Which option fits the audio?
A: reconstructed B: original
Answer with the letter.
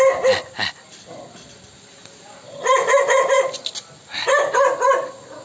B